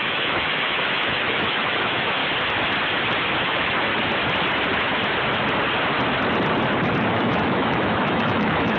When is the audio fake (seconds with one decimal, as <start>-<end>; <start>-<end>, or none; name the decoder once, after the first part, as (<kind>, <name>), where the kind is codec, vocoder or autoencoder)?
0.0-2.2 (autoencoder, DAC-VAE); 3.4-3.9; 7.1-8.8